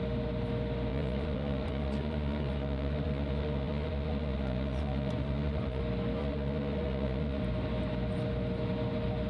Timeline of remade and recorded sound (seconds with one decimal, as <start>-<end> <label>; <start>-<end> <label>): 0.0-0.9 recorded; 0.9-5.8 remade; 5.8-6.2 recorded; 6.2-7.4 remade; 7.4-9.3 recorded